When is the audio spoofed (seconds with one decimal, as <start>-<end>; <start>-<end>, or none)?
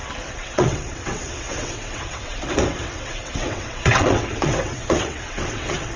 0.0-6.0